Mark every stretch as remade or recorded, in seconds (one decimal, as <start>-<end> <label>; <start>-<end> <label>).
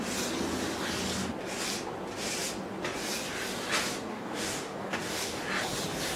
0.0-4.1 recorded; 4.1-5.4 remade; 5.4-6.2 recorded